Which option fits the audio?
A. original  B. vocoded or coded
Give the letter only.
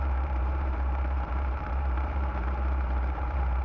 B